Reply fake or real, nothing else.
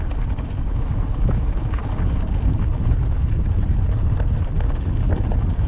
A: real